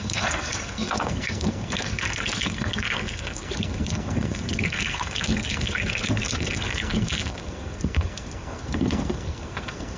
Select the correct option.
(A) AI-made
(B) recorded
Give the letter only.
A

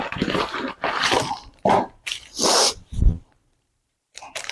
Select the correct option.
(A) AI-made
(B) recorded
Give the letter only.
A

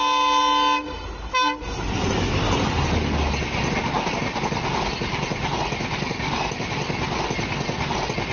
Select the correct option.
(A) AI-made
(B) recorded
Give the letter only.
B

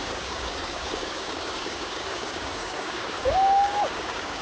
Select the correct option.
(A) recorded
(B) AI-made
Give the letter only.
B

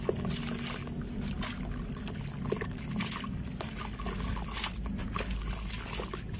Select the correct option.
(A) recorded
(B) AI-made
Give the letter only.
A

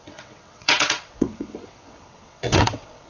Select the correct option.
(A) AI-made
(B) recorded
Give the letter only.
A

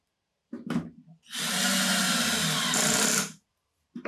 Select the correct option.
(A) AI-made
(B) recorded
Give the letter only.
B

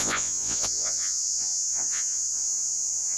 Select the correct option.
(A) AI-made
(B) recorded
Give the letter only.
A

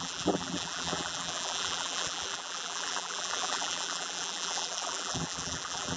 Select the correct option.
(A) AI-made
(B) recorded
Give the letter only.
A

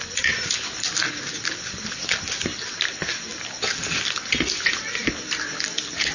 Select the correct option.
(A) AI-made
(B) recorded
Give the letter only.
B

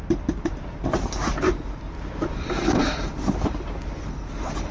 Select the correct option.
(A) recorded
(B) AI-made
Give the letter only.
A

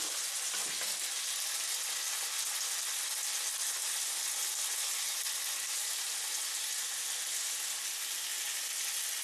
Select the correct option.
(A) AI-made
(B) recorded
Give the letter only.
B